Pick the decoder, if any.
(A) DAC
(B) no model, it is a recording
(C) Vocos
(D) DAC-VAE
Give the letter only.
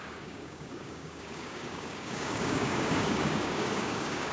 A